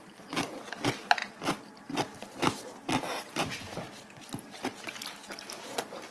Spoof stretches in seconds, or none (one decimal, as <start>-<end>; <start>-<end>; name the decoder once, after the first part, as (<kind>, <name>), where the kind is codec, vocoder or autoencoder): none